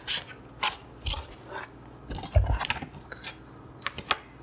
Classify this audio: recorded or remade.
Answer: recorded